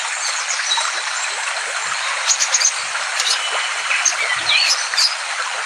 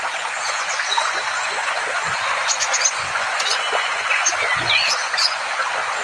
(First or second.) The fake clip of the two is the second